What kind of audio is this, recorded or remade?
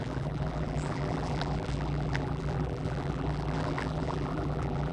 remade